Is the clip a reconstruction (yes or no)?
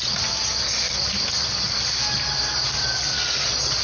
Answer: no